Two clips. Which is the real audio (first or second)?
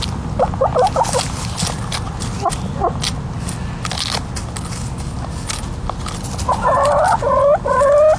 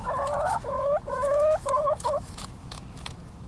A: first